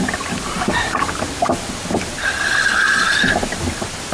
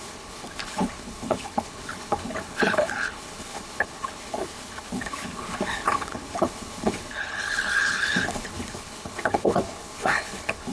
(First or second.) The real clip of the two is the first